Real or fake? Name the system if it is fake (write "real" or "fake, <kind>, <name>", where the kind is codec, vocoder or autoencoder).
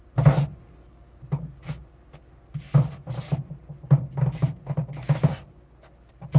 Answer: real